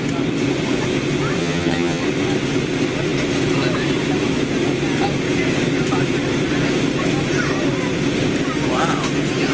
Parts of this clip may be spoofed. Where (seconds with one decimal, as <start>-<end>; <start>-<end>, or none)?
1.4-2.0